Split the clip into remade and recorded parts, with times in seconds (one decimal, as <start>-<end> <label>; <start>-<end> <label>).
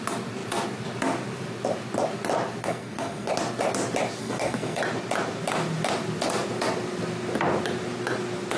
0.0-2.6 recorded; 2.6-3.3 remade; 3.3-4.2 recorded; 4.2-4.8 remade; 4.8-8.6 recorded